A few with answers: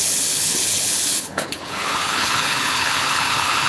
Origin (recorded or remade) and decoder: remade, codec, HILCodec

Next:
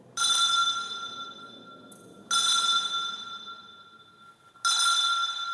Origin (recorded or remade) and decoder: recorded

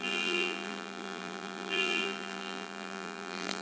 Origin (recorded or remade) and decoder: remade, vocoder, BigVGAN v2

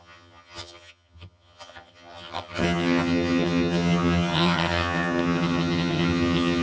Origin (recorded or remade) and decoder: remade, vocoder, HiFi-GAN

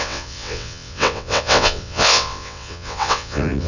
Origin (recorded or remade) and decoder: remade, vocoder, WaveNeXt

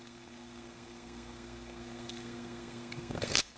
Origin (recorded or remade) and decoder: remade, codec, SNAC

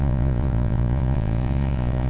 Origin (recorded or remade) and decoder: remade, vocoder, Vocos